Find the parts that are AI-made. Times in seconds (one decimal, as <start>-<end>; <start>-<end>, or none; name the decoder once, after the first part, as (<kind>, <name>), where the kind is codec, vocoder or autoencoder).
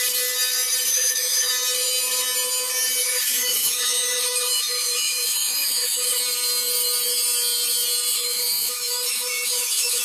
0.9-1.5 (autoencoder, DAC-VAE); 3.0-6.2; 8.1-10.0